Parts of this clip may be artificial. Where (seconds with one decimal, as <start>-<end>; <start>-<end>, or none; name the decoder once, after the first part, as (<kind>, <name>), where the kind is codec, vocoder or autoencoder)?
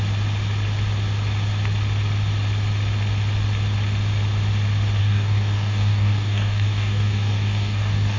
5.0-8.2 (codec, DAC)